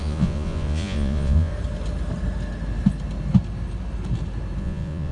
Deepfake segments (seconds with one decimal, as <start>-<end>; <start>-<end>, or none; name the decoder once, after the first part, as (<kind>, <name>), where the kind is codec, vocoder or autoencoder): 0.0-1.5 (vocoder, Vocos); 4.6-5.1